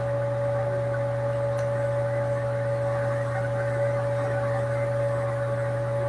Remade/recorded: recorded